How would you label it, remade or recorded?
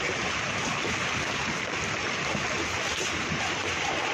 recorded